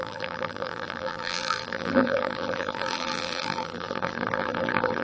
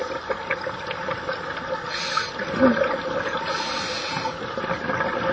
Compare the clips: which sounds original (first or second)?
second